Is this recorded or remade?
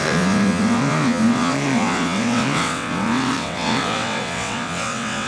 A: remade